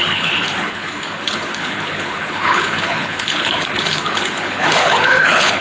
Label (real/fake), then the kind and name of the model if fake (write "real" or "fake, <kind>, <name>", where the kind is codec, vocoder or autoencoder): fake, codec, HILCodec